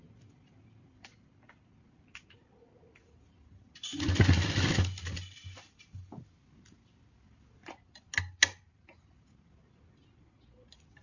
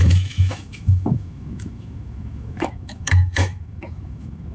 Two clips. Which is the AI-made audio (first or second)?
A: second